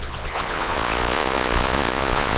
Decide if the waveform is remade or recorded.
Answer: remade